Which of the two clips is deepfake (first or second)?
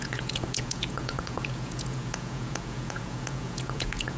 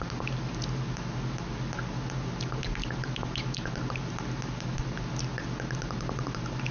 first